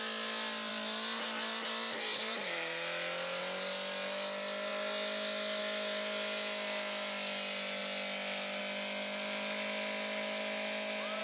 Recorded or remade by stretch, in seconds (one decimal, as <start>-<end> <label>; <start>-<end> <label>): 0.0-11.2 recorded